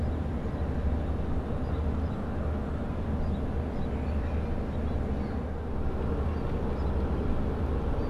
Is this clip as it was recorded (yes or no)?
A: yes